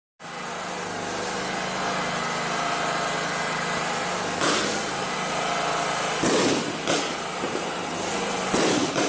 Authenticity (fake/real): real